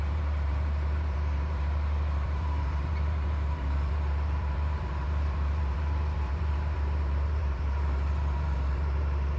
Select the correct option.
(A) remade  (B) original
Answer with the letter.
A